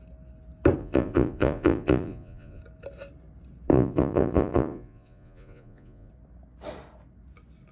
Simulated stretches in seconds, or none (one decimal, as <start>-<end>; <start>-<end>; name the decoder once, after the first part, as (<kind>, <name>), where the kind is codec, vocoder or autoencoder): 0.8-2.6 (vocoder, Vocos); 3.7-6.1